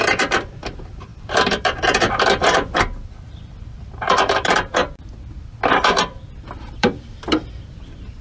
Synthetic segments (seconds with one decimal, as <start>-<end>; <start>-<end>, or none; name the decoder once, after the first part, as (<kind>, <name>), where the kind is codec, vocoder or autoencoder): 0.0-4.8 (vocoder, BigVGAN v2); 6.5-8.2